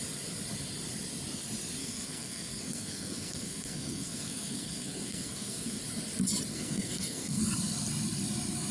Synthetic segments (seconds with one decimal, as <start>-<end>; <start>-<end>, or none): 1.8-5.8; 6.5-7.4